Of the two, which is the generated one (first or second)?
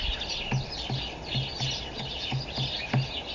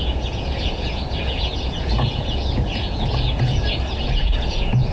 second